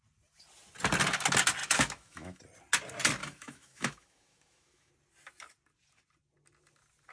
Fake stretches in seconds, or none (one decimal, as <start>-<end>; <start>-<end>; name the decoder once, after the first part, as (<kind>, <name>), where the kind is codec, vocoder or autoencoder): 1.6-2.4 (autoencoder, DAC-VAE); 3.2-4.9